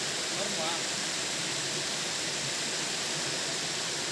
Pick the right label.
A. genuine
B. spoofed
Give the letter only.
A